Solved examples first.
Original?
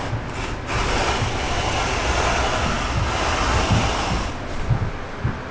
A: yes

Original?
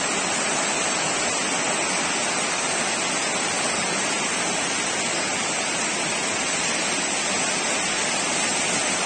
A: yes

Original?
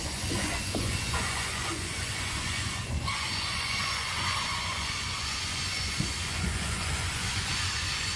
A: no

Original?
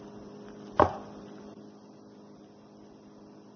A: yes